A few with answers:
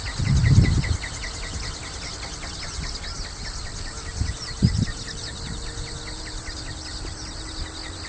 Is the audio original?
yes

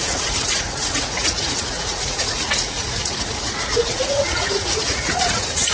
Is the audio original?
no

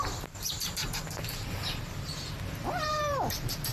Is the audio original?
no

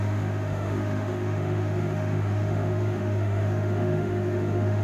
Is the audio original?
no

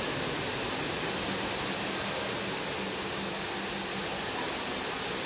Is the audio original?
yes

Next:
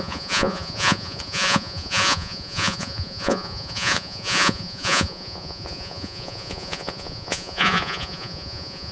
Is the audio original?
no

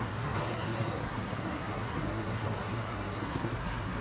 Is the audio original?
no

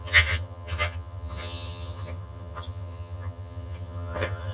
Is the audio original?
no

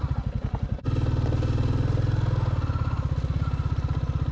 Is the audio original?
yes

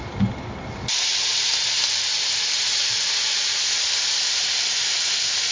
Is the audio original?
yes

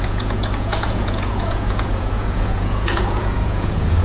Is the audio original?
no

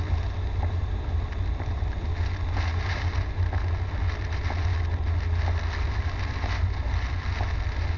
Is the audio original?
yes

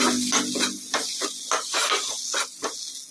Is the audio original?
yes